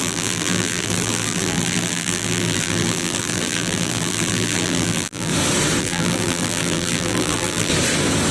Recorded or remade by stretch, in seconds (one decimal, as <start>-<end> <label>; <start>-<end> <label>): 0.0-5.3 remade; 5.3-5.8 recorded; 5.8-7.7 remade; 7.7-8.3 recorded